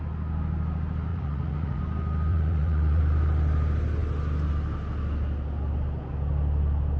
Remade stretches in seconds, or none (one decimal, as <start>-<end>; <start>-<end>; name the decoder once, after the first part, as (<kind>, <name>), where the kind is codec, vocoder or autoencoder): 1.1-1.8 (vocoder, Vocos); 2.3-3.0